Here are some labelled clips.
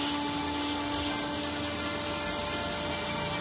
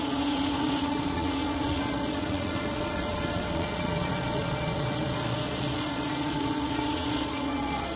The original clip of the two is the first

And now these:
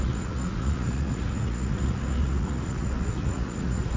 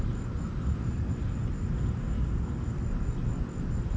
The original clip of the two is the second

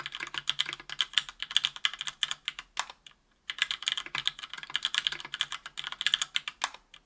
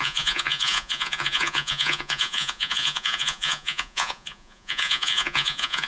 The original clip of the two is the first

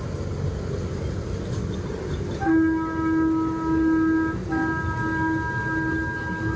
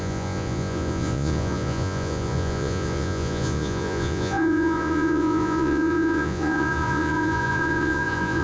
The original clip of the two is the first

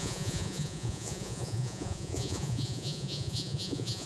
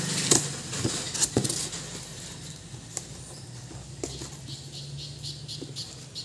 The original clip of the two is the second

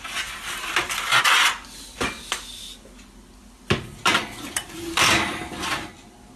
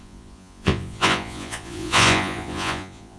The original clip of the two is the first